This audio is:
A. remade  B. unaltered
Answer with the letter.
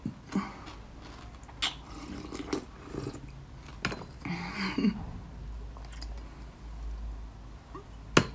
B